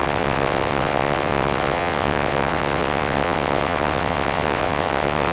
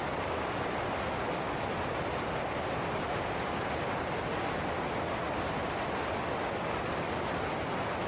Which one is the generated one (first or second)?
first